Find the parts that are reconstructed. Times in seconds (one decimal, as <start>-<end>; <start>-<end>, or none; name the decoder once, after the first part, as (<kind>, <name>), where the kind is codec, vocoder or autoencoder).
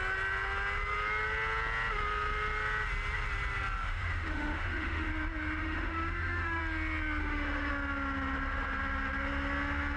3.8-5.1 (autoencoder, DAC-VAE); 5.6-6.6; 7.2-7.7